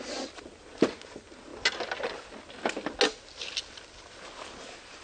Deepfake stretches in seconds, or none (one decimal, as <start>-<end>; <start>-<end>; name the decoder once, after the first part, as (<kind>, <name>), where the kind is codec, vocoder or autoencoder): none